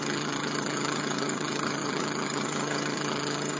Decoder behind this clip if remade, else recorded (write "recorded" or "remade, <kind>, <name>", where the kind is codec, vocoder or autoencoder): remade, vocoder, HiFi-GAN